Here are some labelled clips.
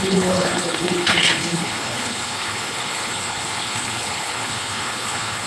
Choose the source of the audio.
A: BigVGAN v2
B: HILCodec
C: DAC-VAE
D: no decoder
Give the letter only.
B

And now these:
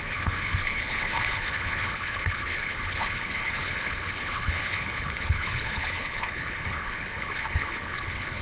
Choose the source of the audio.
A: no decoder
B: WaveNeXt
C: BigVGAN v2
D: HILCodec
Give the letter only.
D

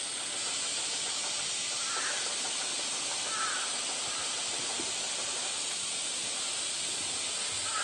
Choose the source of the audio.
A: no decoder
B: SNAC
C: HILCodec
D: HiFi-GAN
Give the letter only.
A